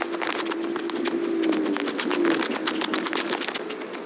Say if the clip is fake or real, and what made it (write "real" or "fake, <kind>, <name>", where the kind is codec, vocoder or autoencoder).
real